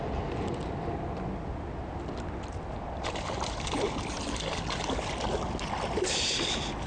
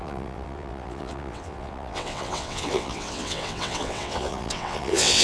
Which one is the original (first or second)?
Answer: first